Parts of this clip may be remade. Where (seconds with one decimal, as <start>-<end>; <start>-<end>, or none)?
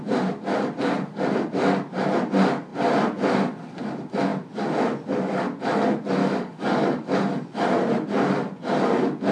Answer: 6.2-7.2